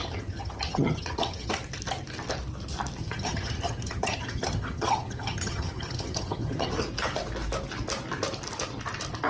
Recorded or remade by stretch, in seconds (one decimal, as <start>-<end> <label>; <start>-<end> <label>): 0.0-1.5 remade; 1.5-3.0 recorded; 3.0-6.7 remade; 6.7-9.3 recorded